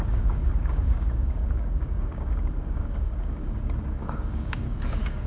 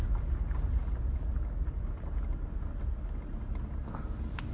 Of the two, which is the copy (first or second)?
first